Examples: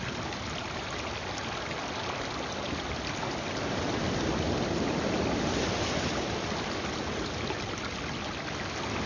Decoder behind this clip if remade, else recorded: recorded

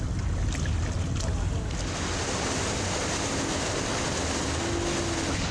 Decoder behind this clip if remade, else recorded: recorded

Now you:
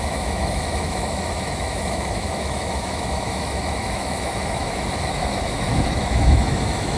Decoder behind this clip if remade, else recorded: remade, autoencoder, DAC-VAE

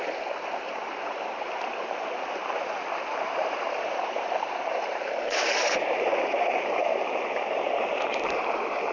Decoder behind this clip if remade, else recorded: remade, vocoder, BigVGAN v2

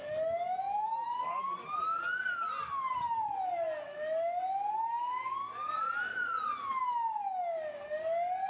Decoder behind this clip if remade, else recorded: recorded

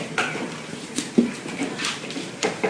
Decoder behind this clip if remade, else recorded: remade, vocoder, BigVGAN v2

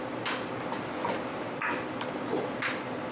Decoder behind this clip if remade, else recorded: recorded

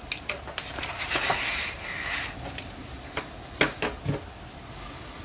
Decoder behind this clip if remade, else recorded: recorded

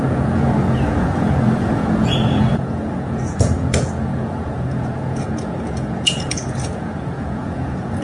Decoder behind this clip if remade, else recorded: remade, vocoder, Vocos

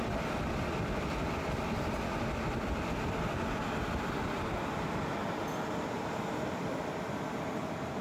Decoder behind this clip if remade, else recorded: recorded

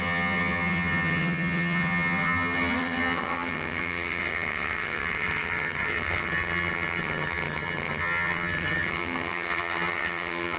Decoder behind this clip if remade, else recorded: remade, vocoder, HiFi-GAN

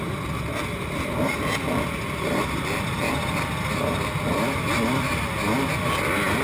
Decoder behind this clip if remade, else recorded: remade, vocoder, BigVGAN v2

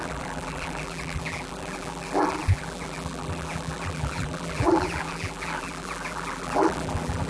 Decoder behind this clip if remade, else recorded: remade, vocoder, BigVGAN v2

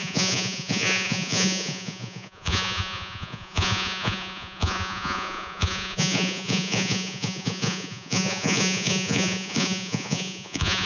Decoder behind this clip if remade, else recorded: remade, vocoder, Vocos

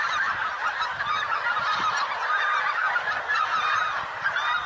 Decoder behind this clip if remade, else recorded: recorded